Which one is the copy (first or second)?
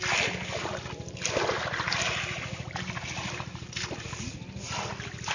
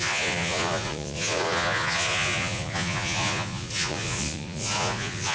second